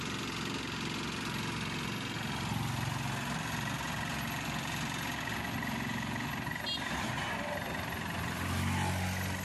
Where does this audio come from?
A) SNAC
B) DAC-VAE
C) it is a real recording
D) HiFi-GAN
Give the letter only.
C